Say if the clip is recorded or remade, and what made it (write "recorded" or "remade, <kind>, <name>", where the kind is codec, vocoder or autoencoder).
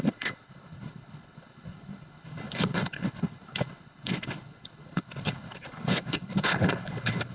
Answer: remade, codec, HILCodec